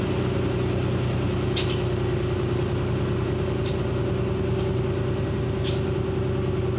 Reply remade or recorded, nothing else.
recorded